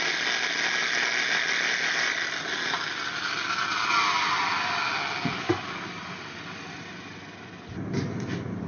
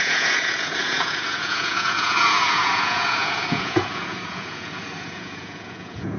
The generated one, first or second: second